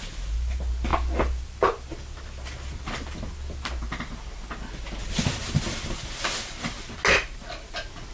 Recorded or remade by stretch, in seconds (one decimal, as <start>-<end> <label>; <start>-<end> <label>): 0.0-8.1 recorded